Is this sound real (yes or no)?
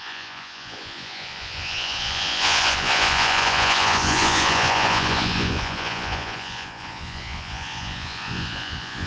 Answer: no